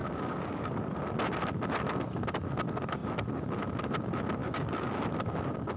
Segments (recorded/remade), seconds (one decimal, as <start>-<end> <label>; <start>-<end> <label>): 0.0-0.7 remade; 0.7-4.4 recorded; 4.4-5.0 remade; 5.0-5.8 recorded